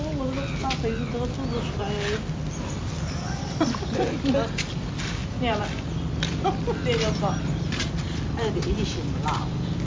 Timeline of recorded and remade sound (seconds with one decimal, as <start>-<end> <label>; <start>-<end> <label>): 0.0-9.9 recorded